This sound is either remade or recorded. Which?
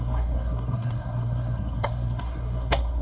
remade